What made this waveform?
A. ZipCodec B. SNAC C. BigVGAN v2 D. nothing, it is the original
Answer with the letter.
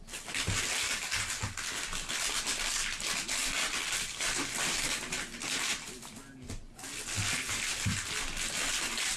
D